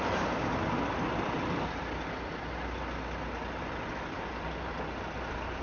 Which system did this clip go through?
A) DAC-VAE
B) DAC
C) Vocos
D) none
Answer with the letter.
D